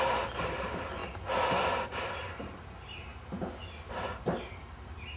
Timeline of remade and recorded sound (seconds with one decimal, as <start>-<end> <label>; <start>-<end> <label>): 0.0-1.0 remade; 1.0-2.1 recorded; 2.1-3.1 remade; 3.1-3.9 recorded; 3.9-5.2 remade